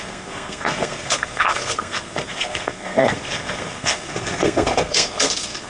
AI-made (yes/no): yes